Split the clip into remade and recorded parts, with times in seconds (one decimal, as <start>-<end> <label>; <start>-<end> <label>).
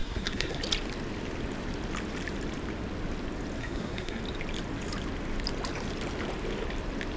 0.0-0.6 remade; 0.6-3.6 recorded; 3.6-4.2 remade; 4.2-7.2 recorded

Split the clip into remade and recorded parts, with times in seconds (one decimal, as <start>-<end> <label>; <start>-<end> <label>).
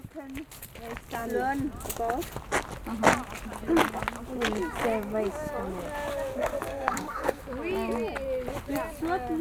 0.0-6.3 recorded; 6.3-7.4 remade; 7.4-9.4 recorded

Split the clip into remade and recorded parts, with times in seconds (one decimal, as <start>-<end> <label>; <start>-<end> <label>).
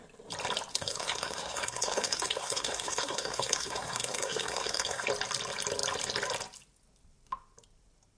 0.0-0.7 recorded; 0.7-5.1 remade; 5.1-8.2 recorded